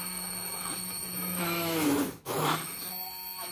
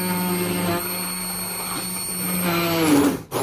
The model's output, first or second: first